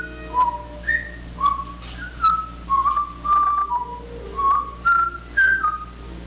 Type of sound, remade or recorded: recorded